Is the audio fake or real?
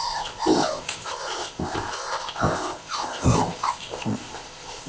fake